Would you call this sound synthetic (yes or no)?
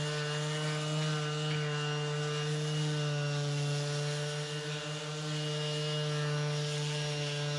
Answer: no